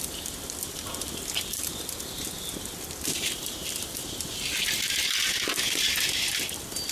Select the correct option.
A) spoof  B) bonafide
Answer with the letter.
B